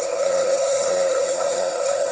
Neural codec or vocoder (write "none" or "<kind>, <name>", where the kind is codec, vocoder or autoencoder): codec, SNAC